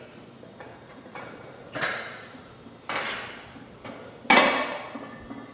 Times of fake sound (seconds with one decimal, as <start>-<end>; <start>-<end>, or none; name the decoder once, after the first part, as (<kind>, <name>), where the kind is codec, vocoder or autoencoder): 0.7-2.5 (vocoder, Vocos)